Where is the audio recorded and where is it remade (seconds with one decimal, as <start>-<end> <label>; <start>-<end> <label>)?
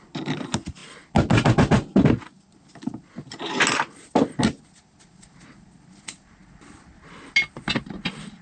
0.0-8.4 recorded